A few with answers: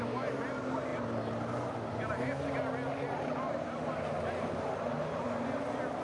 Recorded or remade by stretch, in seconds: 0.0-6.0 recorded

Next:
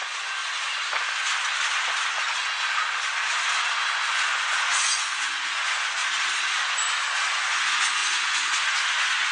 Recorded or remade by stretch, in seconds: 0.0-0.4 remade; 0.4-3.8 recorded; 3.8-6.0 remade; 6.0-7.2 recorded; 7.2-9.3 remade

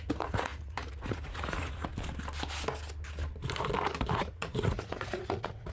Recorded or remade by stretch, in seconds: 0.0-1.9 remade; 1.9-4.1 recorded; 4.1-5.7 remade

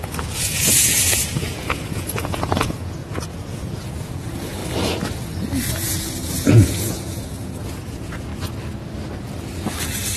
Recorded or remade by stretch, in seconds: 0.0-4.6 remade; 4.6-5.7 recorded; 5.7-8.3 remade; 8.3-10.2 recorded

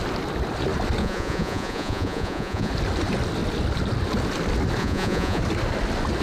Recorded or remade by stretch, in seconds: 0.0-1.0 recorded; 1.0-2.7 remade; 2.7-4.8 recorded; 4.8-5.4 remade; 5.4-6.2 recorded

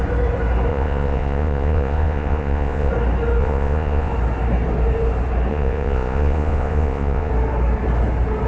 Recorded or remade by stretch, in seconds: 0.0-0.7 recorded; 0.7-2.9 remade; 2.9-3.4 recorded; 3.4-4.1 remade; 4.1-5.5 recorded; 5.5-7.3 remade; 7.3-8.5 recorded

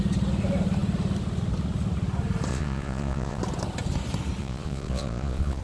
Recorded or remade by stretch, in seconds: 0.0-2.5 recorded; 2.5-3.4 remade; 3.4-4.4 recorded; 4.4-5.6 remade

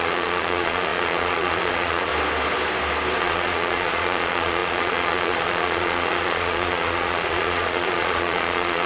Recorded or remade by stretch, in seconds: 0.0-2.1 remade; 2.1-3.2 recorded; 3.2-8.9 remade